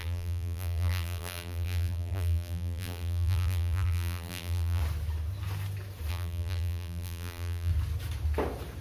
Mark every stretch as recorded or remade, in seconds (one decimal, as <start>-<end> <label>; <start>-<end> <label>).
0.0-4.8 remade; 4.8-6.1 recorded; 6.1-7.7 remade; 7.7-8.8 recorded